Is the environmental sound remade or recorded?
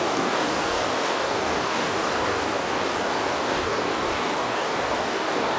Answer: remade